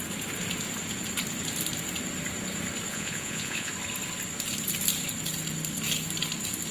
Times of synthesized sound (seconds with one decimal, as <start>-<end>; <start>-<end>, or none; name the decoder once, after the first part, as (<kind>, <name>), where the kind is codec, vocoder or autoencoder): 2.9-3.7 (vocoder, Vocos)